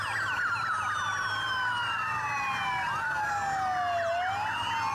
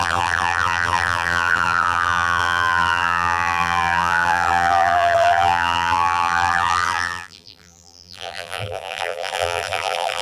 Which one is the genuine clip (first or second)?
first